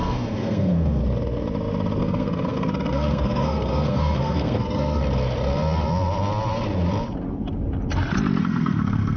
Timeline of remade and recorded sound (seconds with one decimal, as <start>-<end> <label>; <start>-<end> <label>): 0.0-1.0 remade; 1.0-2.0 recorded; 2.0-5.0 remade; 5.0-8.4 recorded; 8.4-9.2 remade